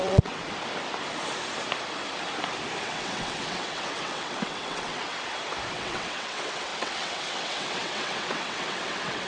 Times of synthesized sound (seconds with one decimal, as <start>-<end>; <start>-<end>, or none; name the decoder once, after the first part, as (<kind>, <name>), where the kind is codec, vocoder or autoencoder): 0.0-0.4 (vocoder, WaveNeXt); 2.8-5.1; 5.7-9.3